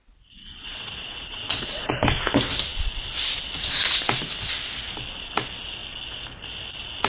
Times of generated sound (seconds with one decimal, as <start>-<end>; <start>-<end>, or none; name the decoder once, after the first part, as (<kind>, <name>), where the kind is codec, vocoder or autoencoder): 0.5-1.9 (vocoder, Vocos)